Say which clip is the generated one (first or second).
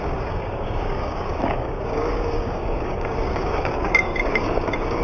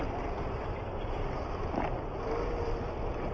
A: first